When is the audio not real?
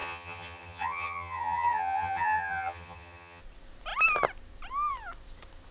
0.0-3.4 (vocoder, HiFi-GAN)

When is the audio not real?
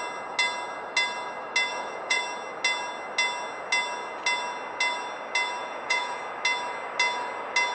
1.7-2.2 (vocoder, Vocos); 5.6-6.2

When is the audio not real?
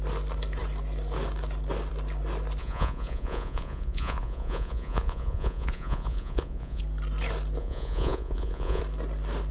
2.6-6.8 (vocoder, Vocos); 7.6-8.8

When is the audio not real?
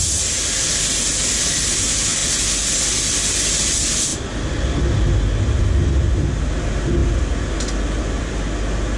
none